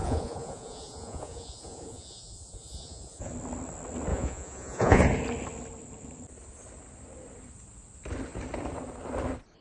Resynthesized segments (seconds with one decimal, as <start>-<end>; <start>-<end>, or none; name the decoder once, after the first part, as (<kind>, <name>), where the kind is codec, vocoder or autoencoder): 0.0-3.3 (vocoder, Vocos); 4.1-5.0